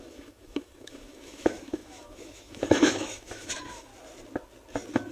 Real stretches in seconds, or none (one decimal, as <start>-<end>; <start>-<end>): 3.9-5.1